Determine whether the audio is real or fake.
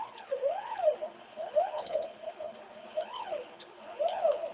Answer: fake